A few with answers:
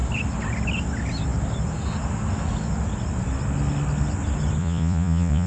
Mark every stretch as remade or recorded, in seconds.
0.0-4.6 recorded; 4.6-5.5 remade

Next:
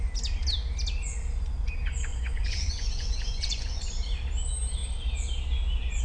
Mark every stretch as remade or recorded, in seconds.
0.0-2.1 recorded; 2.1-3.8 remade; 3.8-6.0 recorded